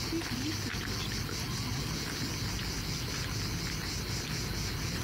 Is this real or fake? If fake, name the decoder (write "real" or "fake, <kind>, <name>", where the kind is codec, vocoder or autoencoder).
real